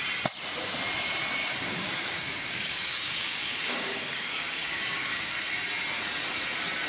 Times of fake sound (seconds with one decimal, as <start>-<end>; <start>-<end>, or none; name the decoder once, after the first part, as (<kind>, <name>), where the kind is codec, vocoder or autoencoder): 1.4-5.5 (codec, DAC)